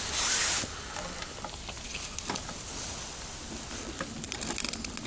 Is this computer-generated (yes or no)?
no